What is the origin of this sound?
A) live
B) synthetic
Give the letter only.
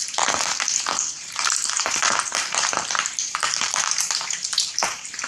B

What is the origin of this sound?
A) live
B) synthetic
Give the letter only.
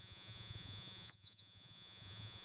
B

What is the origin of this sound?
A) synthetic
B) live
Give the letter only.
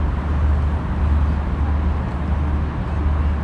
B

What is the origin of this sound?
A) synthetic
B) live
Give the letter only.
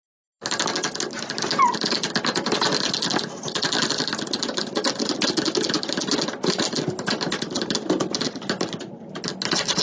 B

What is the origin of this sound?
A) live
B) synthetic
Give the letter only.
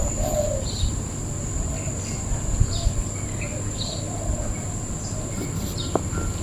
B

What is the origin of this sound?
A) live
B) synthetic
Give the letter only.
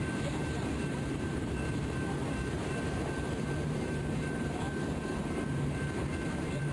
B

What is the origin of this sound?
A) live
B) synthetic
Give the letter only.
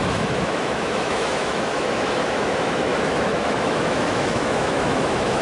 B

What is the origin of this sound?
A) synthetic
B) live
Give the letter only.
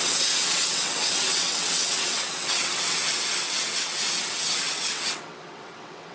A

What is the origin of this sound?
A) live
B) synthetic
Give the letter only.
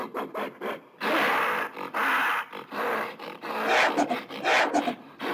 A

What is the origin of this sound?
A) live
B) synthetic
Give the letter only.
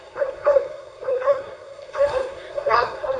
B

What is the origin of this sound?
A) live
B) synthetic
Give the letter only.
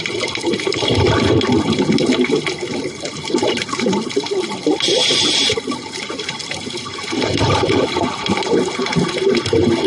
A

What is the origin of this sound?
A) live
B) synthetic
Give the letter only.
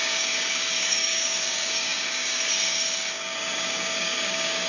B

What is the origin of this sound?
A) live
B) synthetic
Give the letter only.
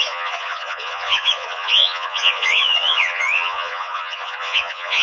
B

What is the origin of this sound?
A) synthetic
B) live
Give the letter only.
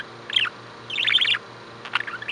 B